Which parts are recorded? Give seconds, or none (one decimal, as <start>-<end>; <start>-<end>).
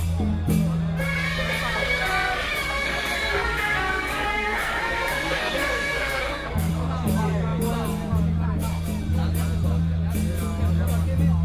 0.0-1.7; 6.7-11.4